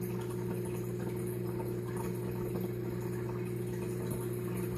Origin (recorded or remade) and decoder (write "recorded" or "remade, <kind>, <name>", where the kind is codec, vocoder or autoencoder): recorded